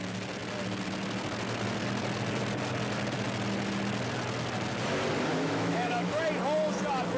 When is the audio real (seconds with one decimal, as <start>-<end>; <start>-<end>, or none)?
0.0-5.3; 6.1-7.2